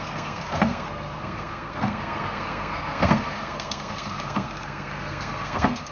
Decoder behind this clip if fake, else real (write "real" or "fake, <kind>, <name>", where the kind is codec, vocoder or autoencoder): fake, codec, SNAC